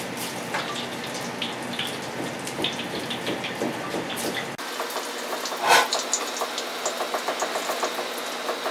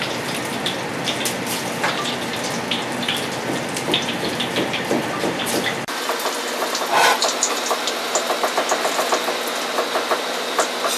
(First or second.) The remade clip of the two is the second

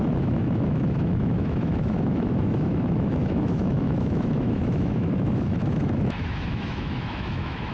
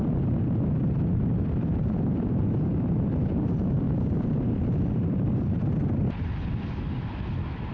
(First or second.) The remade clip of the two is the first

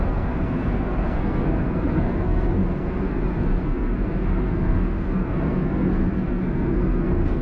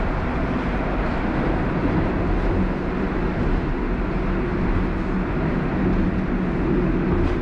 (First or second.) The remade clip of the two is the first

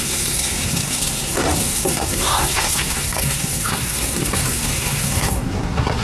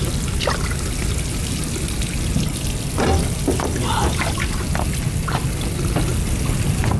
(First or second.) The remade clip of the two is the first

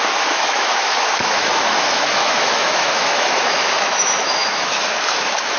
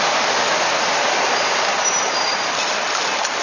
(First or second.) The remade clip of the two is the first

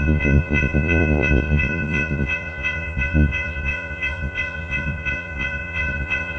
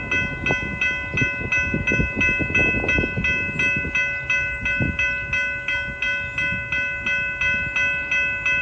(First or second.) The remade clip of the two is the first